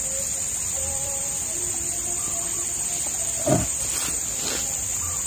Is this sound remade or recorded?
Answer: recorded